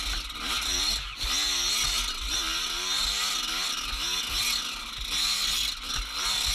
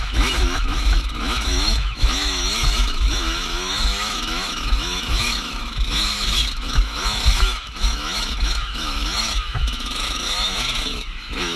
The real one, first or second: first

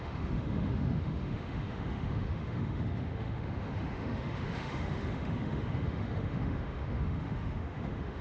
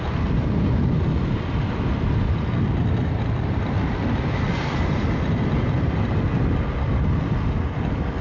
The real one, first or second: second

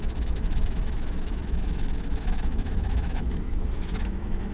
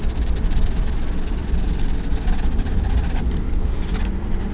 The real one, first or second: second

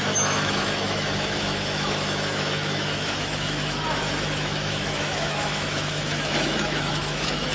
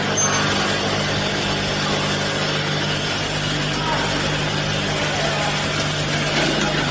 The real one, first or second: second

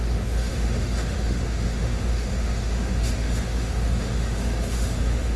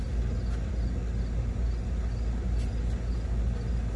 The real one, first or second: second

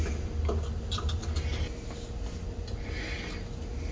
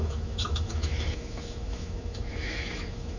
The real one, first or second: first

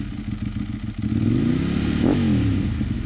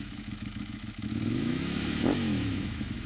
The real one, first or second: first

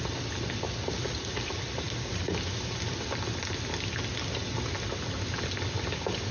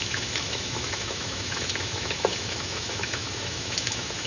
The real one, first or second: first